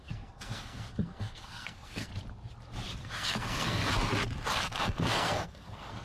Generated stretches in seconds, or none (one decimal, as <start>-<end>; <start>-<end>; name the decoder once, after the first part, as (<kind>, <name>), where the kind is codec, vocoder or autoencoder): 0.0-2.1 (codec, SNAC); 3.0-3.8; 4.5-6.0